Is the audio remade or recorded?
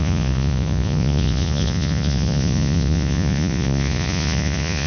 remade